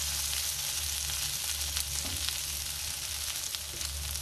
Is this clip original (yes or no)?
yes